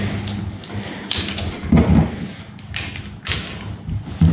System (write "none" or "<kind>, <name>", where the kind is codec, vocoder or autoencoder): none